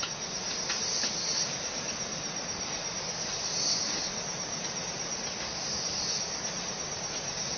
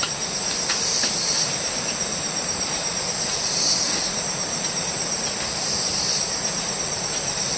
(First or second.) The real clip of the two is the first